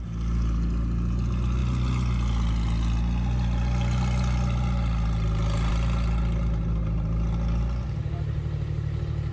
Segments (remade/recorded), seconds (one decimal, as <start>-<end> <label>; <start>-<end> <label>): 0.0-9.3 recorded